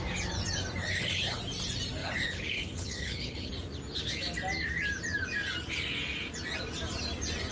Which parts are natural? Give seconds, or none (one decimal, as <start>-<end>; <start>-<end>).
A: 0.0-0.8; 1.4-2.0; 3.5-7.5